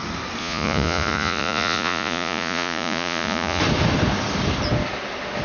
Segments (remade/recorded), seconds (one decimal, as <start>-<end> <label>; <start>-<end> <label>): 0.0-0.4 recorded; 0.4-3.6 remade; 3.6-5.4 recorded